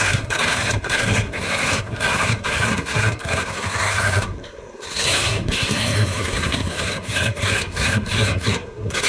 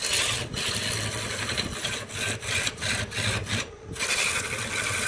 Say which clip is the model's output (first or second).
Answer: first